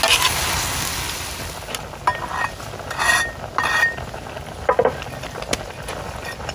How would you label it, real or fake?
real